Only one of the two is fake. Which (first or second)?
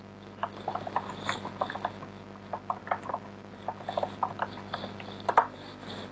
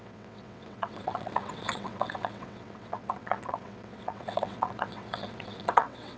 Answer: second